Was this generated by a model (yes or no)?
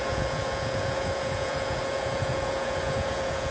yes